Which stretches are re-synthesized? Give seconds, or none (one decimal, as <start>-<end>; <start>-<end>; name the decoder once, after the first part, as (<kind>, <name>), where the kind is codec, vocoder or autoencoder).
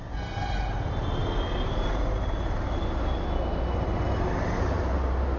none